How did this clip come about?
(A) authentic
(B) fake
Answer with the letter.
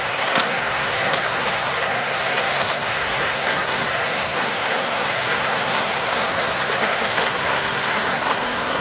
B